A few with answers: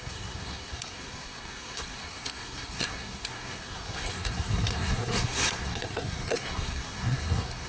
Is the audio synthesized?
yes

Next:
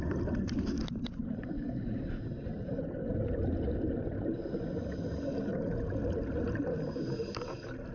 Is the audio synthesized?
no